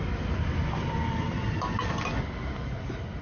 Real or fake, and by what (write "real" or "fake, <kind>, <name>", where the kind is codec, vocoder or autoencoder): real